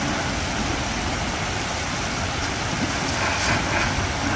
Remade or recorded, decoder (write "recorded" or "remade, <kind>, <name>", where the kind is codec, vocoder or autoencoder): recorded